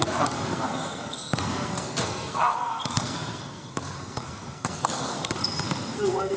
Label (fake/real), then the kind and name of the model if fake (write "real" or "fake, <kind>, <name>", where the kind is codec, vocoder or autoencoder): fake, codec, SNAC